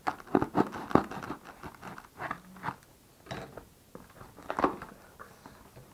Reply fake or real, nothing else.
real